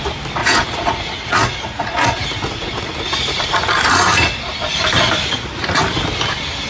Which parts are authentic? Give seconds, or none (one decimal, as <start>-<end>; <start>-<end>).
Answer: 0.0-0.4; 4.4-5.2; 5.8-6.7

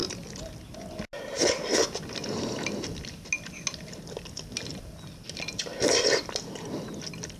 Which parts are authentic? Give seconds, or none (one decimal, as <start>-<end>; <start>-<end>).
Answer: 0.0-7.4

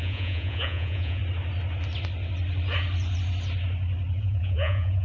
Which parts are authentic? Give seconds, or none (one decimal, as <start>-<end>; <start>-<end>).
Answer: 1.2-4.2